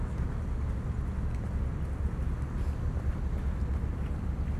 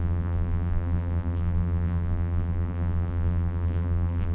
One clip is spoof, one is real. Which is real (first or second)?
first